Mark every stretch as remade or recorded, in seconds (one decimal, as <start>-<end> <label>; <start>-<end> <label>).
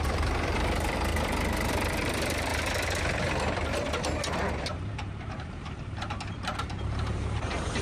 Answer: 0.0-1.1 remade; 1.1-1.7 recorded; 1.7-2.5 remade; 2.5-4.5 recorded; 4.5-7.8 remade